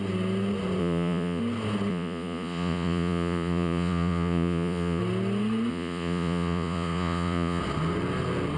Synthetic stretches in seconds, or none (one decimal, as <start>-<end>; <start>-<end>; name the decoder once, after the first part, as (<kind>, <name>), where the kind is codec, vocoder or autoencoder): 0.8-1.4 (vocoder, Vocos); 1.9-5.0; 5.7-7.6